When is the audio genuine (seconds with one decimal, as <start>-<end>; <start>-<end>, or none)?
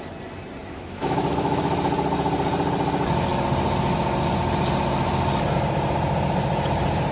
0.0-0.6; 1.6-7.1